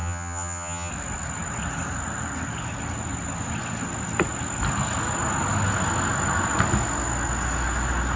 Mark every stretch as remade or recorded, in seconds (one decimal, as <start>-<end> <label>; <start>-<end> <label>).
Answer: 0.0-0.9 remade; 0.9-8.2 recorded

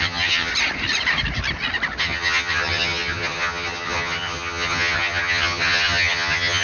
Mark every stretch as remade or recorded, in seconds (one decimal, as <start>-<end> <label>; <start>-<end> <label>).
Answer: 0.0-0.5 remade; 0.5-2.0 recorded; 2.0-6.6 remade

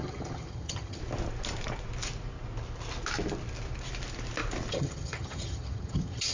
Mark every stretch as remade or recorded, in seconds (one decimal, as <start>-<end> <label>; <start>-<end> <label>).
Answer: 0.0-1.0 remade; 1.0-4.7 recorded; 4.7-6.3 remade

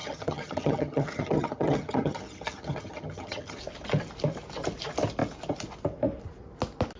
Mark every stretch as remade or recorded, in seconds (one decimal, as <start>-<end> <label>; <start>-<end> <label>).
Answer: 0.0-3.6 remade; 3.6-7.0 recorded

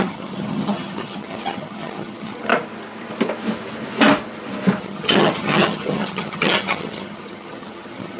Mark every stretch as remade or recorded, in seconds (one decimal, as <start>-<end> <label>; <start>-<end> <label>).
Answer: 0.0-2.5 remade; 2.5-4.8 recorded; 4.8-8.2 remade

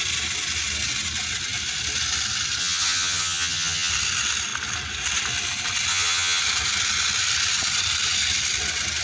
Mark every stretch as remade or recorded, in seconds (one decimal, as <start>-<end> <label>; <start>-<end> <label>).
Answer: 0.0-2.6 recorded; 2.6-3.9 remade; 3.9-5.9 recorded; 5.9-6.4 remade; 6.4-9.0 recorded

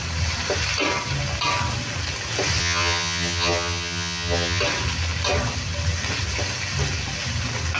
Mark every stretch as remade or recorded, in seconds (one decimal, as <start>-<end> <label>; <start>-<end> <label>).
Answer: 0.0-2.6 recorded; 2.6-4.6 remade; 4.6-7.8 recorded

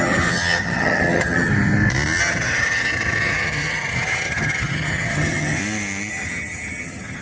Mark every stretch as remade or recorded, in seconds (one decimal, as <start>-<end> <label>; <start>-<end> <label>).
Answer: 0.0-1.5 remade; 1.5-2.2 recorded; 2.2-5.6 remade; 5.6-6.1 recorded; 6.1-7.2 remade